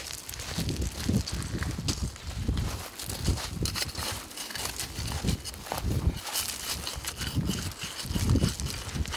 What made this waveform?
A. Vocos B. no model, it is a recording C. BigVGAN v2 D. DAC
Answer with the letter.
B